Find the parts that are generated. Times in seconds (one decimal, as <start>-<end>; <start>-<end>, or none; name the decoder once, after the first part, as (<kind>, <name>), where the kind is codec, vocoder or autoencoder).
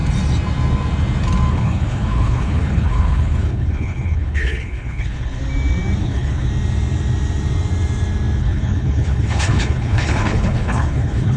1.5-5.4 (codec, HILCodec); 6.0-6.5; 8.4-11.4